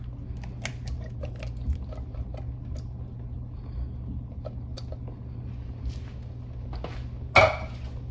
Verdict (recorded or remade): recorded